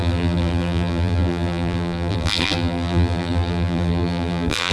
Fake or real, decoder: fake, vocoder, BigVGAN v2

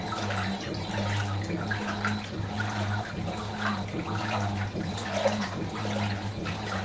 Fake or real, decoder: real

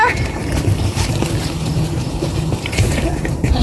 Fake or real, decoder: fake, vocoder, BigVGAN v2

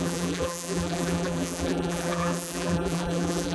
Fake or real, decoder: fake, vocoder, BigVGAN v2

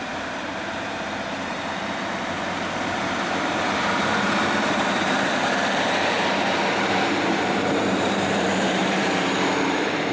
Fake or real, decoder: fake, vocoder, BigVGAN v2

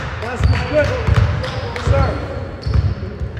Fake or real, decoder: real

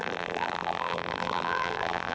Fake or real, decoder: fake, vocoder, BigVGAN v2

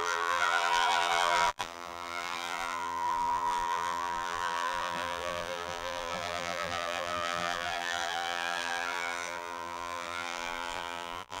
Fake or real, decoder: fake, vocoder, BigVGAN v2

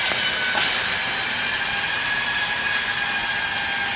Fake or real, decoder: real